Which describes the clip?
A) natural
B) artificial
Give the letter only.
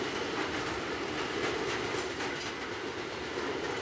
A